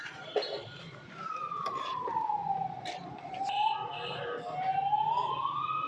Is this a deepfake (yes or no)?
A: yes